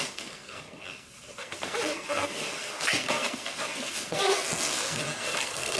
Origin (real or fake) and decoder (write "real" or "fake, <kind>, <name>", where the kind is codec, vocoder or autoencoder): fake, codec, SNAC